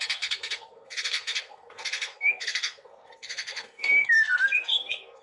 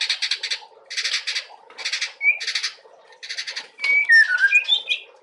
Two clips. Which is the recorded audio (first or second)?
second